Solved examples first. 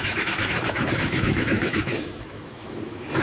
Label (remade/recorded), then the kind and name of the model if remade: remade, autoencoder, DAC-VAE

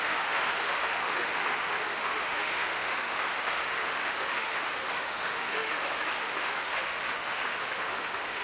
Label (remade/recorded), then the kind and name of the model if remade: remade, autoencoder, DAC-VAE